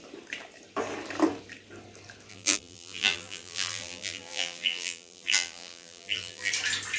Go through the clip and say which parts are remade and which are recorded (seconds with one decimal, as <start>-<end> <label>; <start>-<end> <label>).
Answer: 0.0-2.3 recorded; 2.3-6.5 remade; 6.5-7.0 recorded